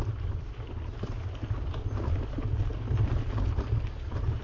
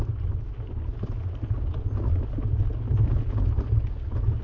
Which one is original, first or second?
second